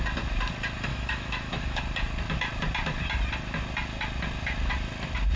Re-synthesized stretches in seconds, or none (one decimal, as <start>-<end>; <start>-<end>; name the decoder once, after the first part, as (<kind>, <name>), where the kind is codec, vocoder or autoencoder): 0.9-1.8 (autoencoder, DAC-VAE)